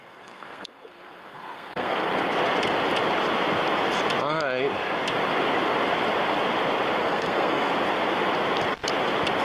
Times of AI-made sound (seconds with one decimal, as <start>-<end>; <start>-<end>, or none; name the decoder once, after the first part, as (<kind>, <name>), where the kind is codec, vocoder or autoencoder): 0.0-2.1 (codec, SNAC); 7.0-7.7